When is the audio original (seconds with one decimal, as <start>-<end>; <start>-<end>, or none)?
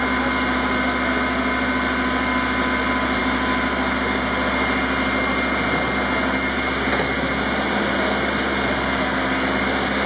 0.0-10.1